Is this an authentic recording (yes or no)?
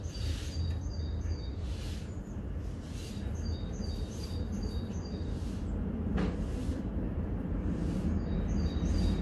yes